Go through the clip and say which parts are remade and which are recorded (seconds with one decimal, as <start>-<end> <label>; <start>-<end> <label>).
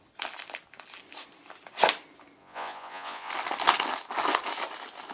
0.0-2.4 recorded; 2.4-3.3 remade; 3.3-5.1 recorded